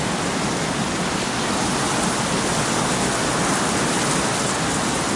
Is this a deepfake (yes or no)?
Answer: no